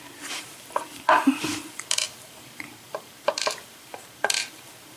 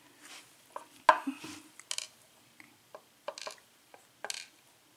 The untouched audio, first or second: second